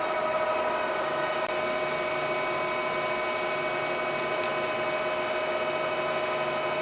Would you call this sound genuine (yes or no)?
yes